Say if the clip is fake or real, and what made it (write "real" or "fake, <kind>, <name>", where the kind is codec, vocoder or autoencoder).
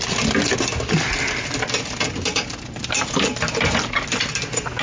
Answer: real